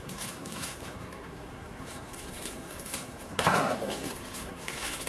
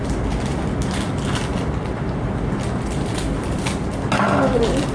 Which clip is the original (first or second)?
second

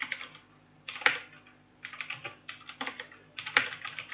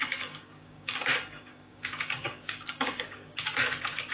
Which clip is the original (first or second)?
first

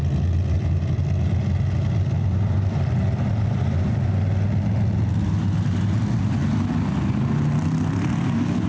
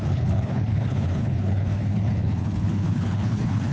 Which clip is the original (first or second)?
first